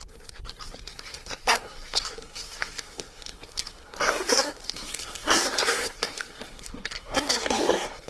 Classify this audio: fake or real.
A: fake